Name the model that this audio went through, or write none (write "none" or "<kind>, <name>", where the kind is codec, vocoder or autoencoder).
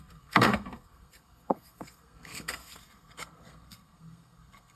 codec, SNAC